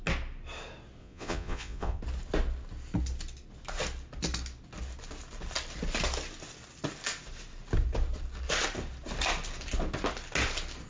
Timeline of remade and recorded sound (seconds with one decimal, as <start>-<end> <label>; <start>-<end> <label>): 0.0-1.0 recorded; 1.0-2.0 remade; 2.0-10.9 recorded